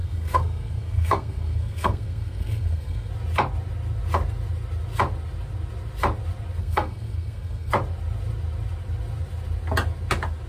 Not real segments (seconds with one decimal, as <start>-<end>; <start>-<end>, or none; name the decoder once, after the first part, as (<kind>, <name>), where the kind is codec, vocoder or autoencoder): 0.0-3.1 (codec, SNAC); 6.6-7.7